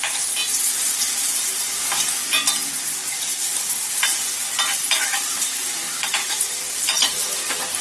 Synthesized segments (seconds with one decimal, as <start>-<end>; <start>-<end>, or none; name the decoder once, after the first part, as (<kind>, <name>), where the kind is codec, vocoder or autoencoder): 0.0-0.4 (vocoder, BigVGAN v2); 1.0-2.2; 3.4-4.1; 4.7-7.8